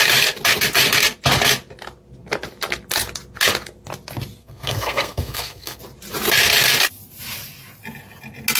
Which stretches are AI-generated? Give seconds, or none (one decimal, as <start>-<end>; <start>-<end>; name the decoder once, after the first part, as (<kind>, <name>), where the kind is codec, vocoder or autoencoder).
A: 4.4-5.8 (codec, SNAC)